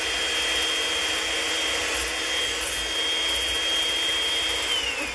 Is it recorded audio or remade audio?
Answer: recorded